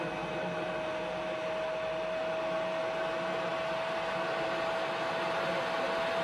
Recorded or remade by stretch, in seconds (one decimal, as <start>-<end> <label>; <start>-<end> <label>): 0.0-6.2 recorded